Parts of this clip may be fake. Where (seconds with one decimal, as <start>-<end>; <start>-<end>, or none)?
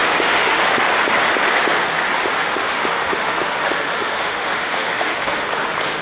0.0-0.9; 2.4-5.4